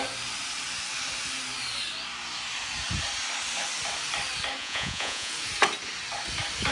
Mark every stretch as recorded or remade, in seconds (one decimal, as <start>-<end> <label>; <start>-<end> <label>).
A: 0.0-4.6 recorded; 4.6-5.3 remade; 5.3-6.7 recorded